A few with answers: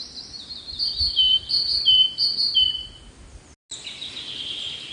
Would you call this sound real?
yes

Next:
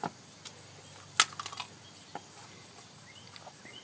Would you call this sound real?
yes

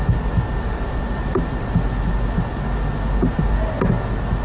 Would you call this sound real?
yes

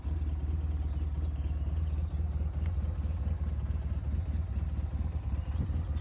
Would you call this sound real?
yes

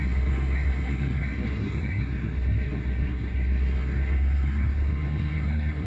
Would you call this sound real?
no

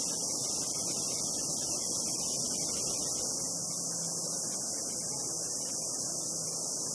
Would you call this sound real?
yes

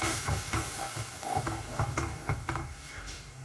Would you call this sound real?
no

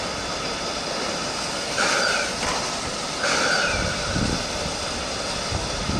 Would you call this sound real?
yes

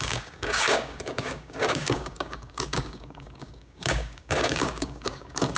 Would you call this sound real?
no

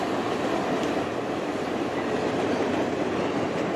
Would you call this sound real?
yes